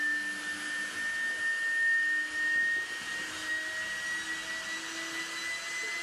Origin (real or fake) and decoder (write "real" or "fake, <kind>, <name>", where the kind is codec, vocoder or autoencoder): real